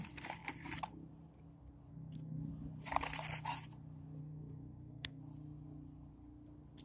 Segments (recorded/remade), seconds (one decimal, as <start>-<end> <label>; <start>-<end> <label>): 0.0-1.9 recorded; 1.9-2.5 remade; 2.5-4.2 recorded; 4.2-5.2 remade; 5.2-6.8 recorded